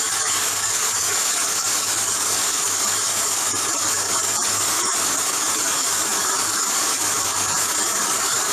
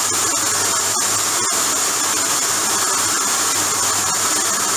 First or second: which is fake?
first